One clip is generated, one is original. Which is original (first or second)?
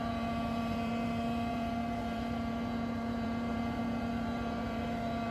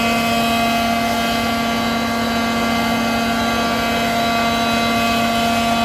second